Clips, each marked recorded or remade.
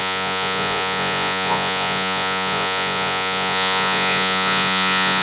remade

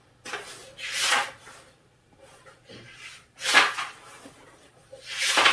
recorded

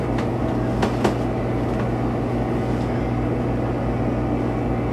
recorded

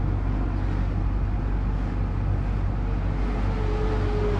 recorded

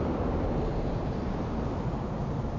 remade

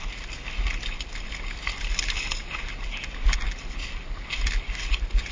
recorded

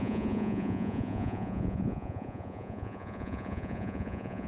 remade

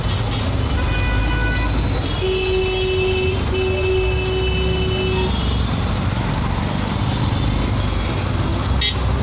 recorded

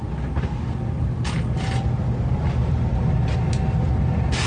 recorded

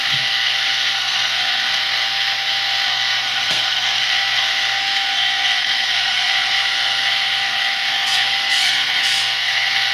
remade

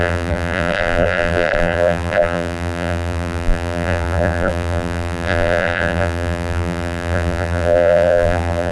remade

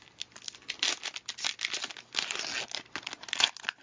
recorded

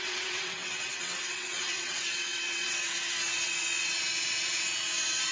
remade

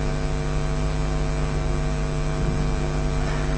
recorded